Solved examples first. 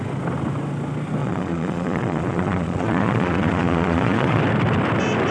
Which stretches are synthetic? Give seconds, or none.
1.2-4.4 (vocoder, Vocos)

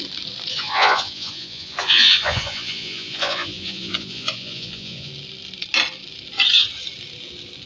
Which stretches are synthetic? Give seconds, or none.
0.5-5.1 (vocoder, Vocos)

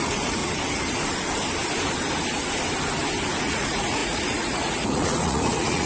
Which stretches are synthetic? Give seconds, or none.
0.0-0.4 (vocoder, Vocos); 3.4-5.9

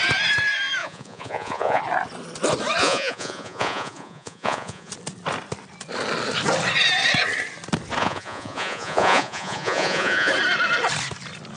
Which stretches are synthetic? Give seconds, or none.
0.8-1.8 (vocoder, Vocos); 2.8-4.9; 8.0-10.3

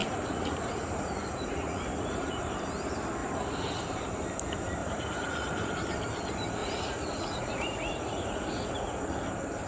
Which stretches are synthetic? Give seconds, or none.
0.0-2.5 (vocoder, Vocos); 3.2-3.8; 4.8-5.7; 6.6-9.0